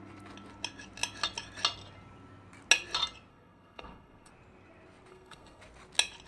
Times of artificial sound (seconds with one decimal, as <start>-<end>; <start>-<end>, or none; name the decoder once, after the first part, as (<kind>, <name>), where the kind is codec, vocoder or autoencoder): 3.3-4.3 (codec, SNAC); 5.1-5.6